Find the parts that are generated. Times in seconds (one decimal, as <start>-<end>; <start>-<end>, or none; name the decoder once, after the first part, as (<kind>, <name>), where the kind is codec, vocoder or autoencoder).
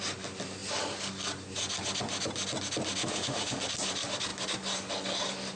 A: 3.0-3.6 (autoencoder, DAC-VAE)